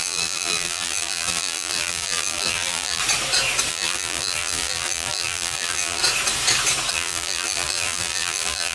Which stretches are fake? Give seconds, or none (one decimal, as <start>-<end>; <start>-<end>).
0.0-3.0; 3.7-6.0; 6.9-8.7